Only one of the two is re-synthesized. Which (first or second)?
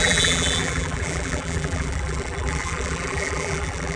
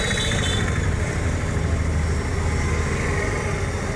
first